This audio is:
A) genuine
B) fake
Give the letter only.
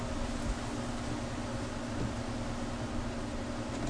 A